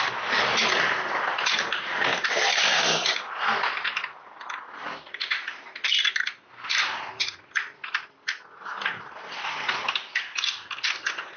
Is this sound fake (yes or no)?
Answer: yes